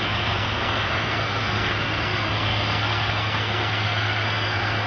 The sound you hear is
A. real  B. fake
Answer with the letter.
B